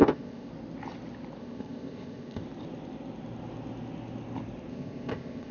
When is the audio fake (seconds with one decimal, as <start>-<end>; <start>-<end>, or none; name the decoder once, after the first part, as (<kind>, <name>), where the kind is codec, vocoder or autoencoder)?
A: 0.0-0.5 (codec, ZipCodec); 1.4-2.4; 4.7-5.5